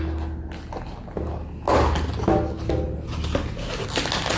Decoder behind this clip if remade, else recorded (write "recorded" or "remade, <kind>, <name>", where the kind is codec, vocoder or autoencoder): recorded